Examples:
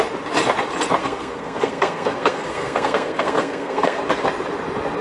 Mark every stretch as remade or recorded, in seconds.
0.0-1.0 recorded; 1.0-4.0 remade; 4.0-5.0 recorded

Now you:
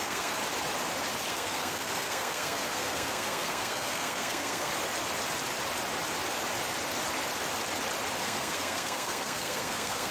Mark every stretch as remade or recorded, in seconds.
0.0-0.4 remade; 0.4-1.3 recorded; 1.3-4.7 remade; 4.7-8.2 recorded; 8.2-10.1 remade

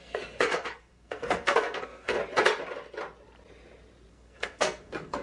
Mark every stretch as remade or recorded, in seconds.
0.0-2.2 remade; 2.2-4.1 recorded; 4.1-5.2 remade